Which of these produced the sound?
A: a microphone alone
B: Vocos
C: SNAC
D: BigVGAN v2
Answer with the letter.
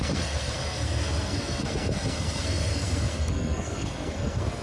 C